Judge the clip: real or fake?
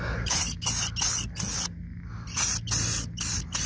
real